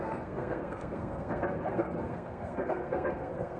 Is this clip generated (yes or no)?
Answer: yes